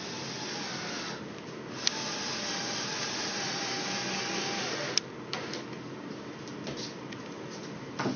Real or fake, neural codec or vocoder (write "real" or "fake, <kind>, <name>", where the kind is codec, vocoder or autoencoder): real